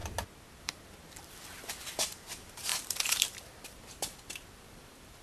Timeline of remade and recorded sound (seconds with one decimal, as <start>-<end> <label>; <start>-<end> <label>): 0.0-0.6 recorded; 0.6-5.2 remade

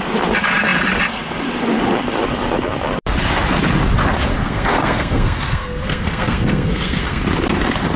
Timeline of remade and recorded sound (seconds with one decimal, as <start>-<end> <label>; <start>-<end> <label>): 0.0-4.3 recorded; 4.3-7.2 remade; 7.2-8.0 recorded